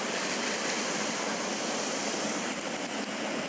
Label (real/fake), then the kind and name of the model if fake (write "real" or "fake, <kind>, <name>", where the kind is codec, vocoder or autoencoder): fake, vocoder, BigVGAN v2